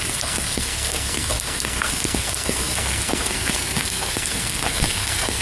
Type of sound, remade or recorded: remade